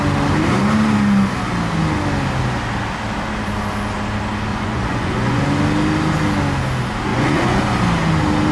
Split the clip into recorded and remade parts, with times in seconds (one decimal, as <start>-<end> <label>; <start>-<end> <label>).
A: 0.0-4.5 recorded; 4.5-5.4 remade; 5.4-7.1 recorded; 7.1-7.6 remade; 7.6-8.5 recorded